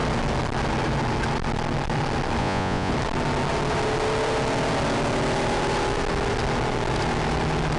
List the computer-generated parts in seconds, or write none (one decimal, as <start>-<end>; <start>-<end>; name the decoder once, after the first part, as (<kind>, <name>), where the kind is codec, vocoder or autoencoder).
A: 2.4-2.9 (vocoder, Vocos)

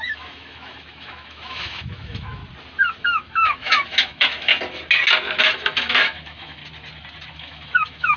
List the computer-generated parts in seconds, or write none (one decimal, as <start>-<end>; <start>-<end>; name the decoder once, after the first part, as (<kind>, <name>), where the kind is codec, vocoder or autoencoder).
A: 0.0-2.4 (autoencoder, DAC-VAE); 3.0-4.5; 5.4-6.6; 7.3-8.2

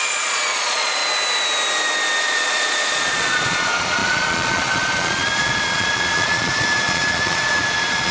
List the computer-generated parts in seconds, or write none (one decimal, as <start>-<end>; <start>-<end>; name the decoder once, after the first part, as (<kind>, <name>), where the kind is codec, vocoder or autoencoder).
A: 0.0-1.0 (vocoder, Vocos); 2.2-8.1

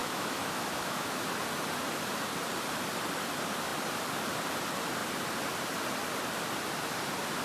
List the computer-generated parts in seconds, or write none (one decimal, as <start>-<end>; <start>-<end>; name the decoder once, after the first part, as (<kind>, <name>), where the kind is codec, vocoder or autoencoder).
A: 0.0-1.2 (autoencoder, DAC-VAE)